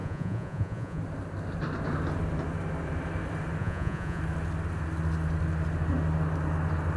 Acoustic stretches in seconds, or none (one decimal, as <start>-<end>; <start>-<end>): 1.0-3.6; 4.2-7.0